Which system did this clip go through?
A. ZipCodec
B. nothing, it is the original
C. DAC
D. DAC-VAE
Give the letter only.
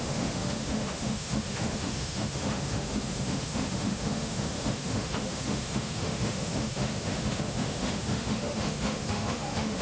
D